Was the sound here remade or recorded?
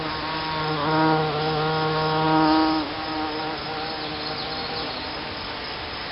recorded